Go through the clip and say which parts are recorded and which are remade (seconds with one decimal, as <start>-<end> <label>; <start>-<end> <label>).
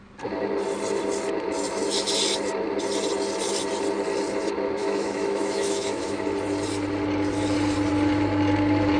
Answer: 0.0-4.8 recorded; 4.8-6.2 remade; 6.2-9.0 recorded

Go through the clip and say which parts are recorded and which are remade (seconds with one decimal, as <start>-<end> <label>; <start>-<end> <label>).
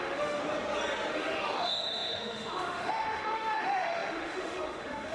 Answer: 0.0-0.4 remade; 0.4-1.1 recorded; 1.1-5.1 remade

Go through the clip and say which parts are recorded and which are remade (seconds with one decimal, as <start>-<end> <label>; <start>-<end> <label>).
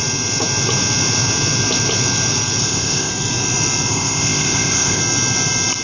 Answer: 0.0-2.6 recorded; 2.6-3.1 remade; 3.1-3.9 recorded; 3.9-5.0 remade; 5.0-5.8 recorded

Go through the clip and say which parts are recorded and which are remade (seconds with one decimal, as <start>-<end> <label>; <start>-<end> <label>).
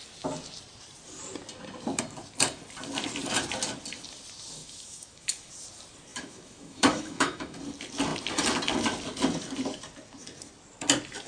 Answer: 0.0-4.6 recorded; 4.6-5.5 remade; 5.5-6.1 recorded; 6.1-7.6 remade; 7.6-11.3 recorded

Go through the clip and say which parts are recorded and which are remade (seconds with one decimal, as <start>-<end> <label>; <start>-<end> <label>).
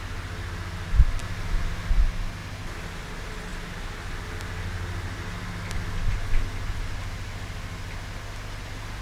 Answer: 0.0-9.0 recorded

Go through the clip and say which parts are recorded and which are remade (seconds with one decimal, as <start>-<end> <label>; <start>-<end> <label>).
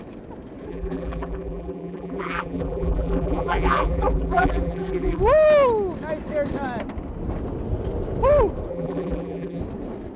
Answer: 0.0-0.7 recorded; 0.7-5.2 remade; 5.2-8.7 recorded; 8.7-9.6 remade; 9.6-10.2 recorded